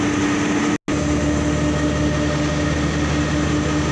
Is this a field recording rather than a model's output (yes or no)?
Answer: yes